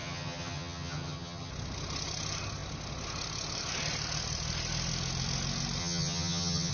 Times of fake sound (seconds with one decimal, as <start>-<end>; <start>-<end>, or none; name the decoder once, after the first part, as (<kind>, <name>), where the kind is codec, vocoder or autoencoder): 0.0-1.5 (vocoder, HiFi-GAN); 5.8-6.7